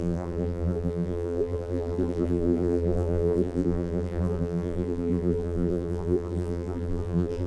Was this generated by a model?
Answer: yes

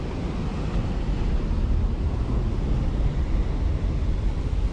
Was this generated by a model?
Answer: no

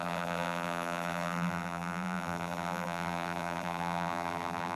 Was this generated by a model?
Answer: yes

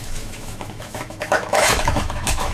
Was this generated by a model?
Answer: yes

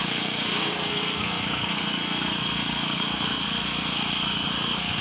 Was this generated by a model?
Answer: yes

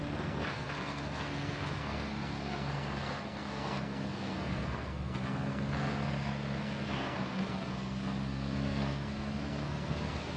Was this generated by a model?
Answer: yes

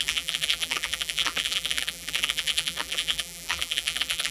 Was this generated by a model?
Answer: yes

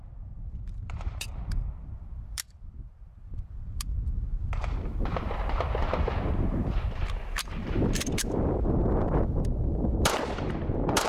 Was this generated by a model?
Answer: yes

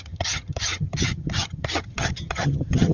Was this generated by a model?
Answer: yes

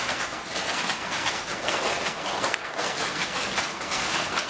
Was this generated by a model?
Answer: yes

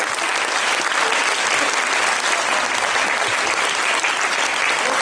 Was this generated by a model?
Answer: no